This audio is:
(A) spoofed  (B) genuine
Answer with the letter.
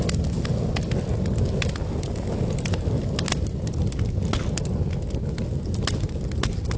B